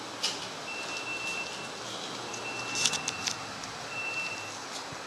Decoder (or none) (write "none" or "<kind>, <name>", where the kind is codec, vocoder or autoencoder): none